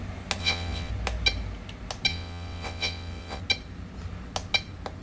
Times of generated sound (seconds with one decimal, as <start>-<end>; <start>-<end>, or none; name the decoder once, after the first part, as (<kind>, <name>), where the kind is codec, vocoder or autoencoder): 0.4-0.9 (vocoder, WaveNeXt); 2.1-3.4